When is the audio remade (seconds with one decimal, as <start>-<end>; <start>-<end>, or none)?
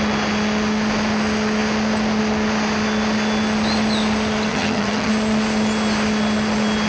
4.5-5.1